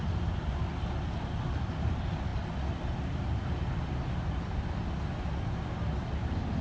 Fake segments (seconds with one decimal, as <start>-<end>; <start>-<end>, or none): 2.3-3.9